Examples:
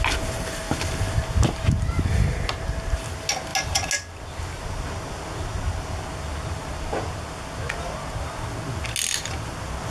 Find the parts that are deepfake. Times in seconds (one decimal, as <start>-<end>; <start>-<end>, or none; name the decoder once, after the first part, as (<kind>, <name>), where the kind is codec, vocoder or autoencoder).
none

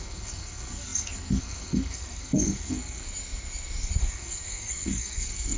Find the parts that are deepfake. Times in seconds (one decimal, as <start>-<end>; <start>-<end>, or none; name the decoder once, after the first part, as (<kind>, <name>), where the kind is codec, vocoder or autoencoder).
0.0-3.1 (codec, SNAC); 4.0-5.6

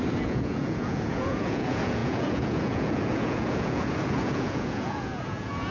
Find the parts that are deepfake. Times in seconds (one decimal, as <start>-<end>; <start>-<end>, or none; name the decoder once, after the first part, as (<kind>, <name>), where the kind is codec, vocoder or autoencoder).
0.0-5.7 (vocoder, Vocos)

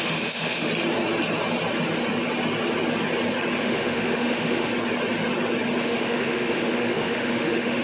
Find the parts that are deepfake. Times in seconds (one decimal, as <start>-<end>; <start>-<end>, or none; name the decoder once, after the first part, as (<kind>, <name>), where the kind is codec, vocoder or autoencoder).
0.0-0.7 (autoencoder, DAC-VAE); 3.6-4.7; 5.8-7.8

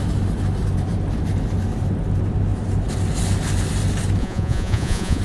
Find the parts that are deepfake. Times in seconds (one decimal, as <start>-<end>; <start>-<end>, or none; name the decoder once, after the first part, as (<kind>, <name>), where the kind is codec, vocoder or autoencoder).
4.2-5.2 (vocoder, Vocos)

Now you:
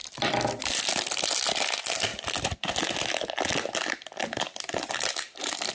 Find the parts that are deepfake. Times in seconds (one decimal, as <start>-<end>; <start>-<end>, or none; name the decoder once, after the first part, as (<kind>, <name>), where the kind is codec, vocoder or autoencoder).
none

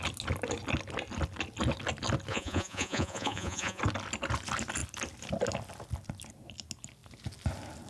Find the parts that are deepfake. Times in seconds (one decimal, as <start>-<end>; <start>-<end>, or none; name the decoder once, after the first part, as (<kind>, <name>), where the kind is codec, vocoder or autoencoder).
2.3-3.8 (vocoder, Vocos)

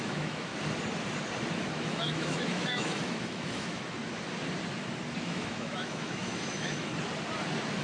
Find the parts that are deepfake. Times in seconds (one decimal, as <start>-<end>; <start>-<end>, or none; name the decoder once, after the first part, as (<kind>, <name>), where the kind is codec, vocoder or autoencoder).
0.0-0.5 (autoencoder, DAC-VAE); 1.7-4.0; 5.2-6.9